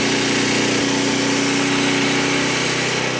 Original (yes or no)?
yes